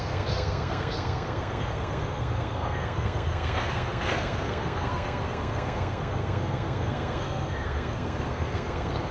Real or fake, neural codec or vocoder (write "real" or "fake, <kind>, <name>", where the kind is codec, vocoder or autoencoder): fake, codec, SNAC